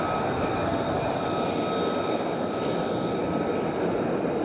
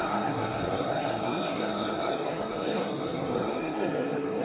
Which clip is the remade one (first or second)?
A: second